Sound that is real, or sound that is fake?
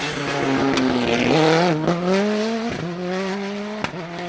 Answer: real